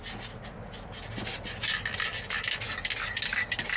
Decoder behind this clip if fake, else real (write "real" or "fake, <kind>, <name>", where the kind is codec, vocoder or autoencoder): real